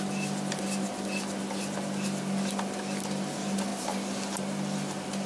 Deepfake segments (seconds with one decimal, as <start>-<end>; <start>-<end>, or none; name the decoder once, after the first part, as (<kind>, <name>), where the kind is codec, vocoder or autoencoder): none